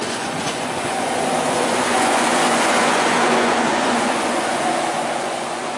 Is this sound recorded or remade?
remade